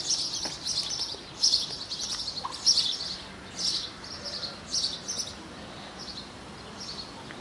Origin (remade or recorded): recorded